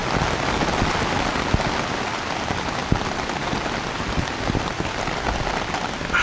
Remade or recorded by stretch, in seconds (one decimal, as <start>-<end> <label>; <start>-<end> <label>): 0.0-1.9 recorded; 1.9-2.8 remade; 2.8-4.0 recorded; 4.0-6.2 remade